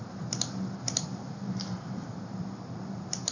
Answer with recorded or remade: remade